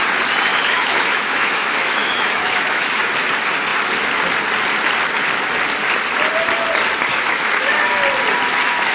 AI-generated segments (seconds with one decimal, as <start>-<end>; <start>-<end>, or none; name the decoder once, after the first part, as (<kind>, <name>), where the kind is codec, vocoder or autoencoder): 0.5-3.0 (autoencoder, DAC-VAE); 7.1-7.7